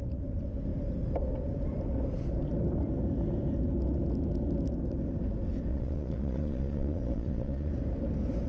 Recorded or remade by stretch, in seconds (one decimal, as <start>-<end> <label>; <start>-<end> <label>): 0.0-5.7 recorded; 5.7-7.7 remade; 7.7-8.5 recorded